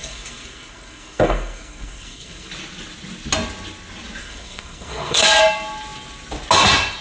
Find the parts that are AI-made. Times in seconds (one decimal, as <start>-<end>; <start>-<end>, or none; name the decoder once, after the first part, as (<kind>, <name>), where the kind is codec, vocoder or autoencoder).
0.0-2.5 (codec, SNAC); 4.2-5.4